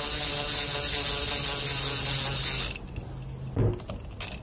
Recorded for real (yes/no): yes